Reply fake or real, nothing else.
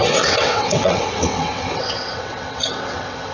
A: fake